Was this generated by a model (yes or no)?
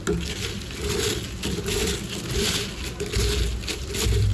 no